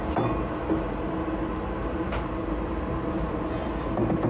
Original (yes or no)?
yes